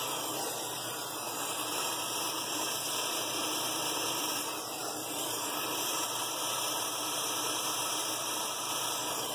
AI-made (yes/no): yes